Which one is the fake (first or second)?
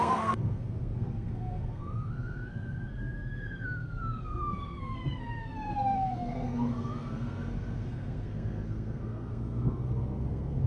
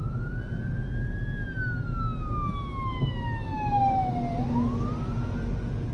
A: first